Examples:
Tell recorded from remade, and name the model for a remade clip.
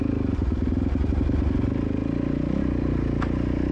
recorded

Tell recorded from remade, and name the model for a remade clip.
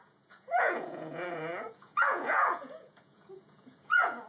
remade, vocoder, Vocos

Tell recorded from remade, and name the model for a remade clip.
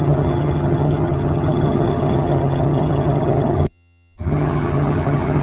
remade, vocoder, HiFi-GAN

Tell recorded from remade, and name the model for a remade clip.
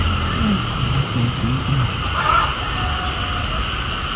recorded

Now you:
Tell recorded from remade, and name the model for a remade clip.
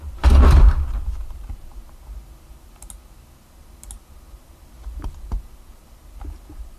recorded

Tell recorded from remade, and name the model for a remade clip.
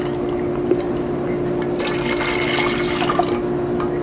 recorded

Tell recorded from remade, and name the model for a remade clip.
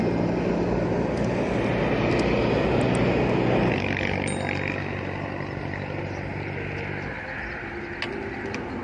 recorded